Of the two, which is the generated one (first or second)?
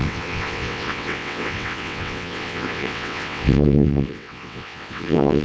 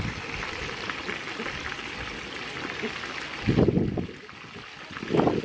first